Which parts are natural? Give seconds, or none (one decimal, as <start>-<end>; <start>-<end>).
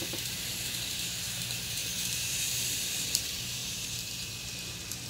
none